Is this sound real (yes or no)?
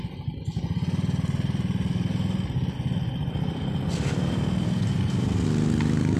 yes